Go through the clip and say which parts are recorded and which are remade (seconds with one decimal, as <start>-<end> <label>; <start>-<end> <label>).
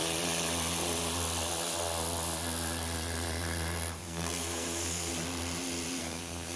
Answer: 0.0-4.0 recorded; 4.0-5.1 remade; 5.1-6.0 recorded; 6.0-6.6 remade